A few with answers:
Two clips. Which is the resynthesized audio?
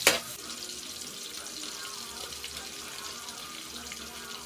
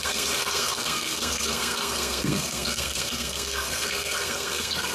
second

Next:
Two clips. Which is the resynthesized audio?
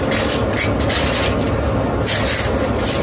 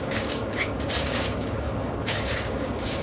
second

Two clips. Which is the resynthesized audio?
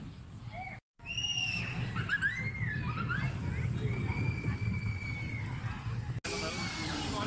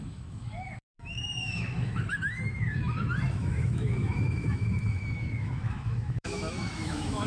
second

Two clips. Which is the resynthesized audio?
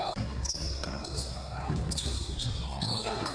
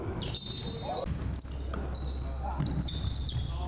first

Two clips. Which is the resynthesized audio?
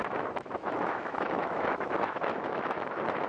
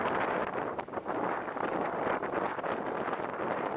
first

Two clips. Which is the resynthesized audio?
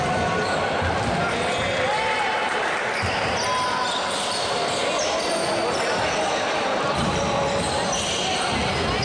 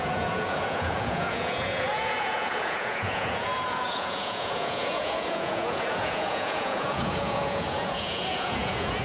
second